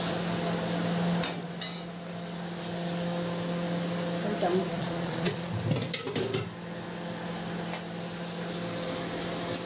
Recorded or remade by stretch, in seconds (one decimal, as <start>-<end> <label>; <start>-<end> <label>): 0.0-4.7 recorded; 4.7-5.5 remade; 5.5-9.7 recorded